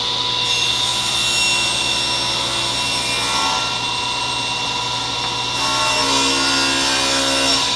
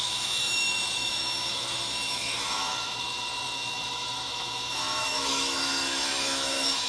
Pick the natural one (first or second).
first